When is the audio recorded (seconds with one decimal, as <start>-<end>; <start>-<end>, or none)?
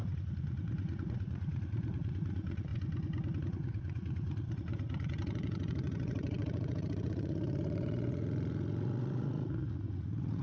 2.7-3.4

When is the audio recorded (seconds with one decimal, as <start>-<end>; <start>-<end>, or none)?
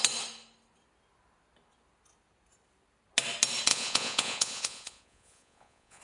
0.0-3.7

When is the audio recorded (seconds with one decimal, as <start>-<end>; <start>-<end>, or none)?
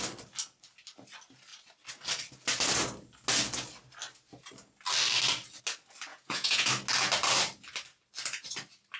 0.0-6.1; 6.7-9.0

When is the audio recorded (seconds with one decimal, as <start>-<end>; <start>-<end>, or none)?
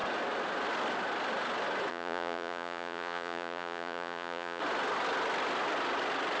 0.0-1.9; 4.6-6.4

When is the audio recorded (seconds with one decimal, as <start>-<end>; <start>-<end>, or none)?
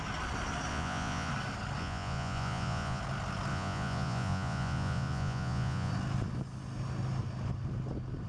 0.0-0.7; 1.3-1.8; 3.0-3.5; 5.9-8.3